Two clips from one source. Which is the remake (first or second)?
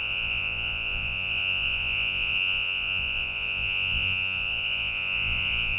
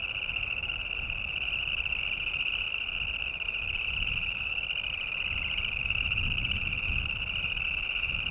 first